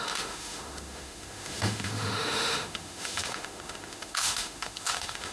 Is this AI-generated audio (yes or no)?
yes